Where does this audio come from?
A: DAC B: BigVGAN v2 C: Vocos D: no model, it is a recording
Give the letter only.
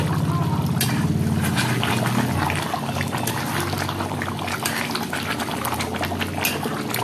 D